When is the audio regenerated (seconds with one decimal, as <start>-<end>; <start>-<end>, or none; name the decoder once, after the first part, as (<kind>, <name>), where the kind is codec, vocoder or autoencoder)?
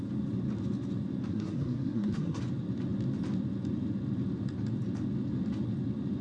1.3-2.4 (codec, SNAC)